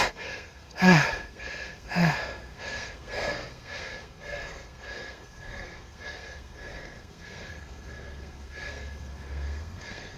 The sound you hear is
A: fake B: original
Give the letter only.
A